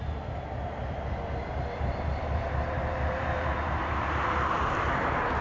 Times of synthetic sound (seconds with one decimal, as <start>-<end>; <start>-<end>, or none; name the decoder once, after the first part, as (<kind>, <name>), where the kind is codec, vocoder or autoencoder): 1.5-4.7 (vocoder, BigVGAN v2)